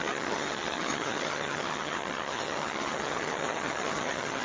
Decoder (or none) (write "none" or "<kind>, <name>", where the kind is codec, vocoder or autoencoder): vocoder, HiFi-GAN